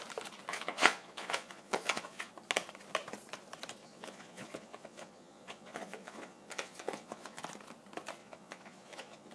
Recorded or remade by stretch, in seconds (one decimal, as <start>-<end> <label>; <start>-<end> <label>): 0.0-0.5 recorded; 0.5-2.3 remade; 2.3-3.8 recorded; 3.8-7.4 remade; 7.4-8.2 recorded; 8.2-9.3 remade